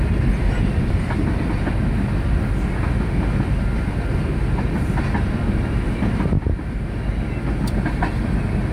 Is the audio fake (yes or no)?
no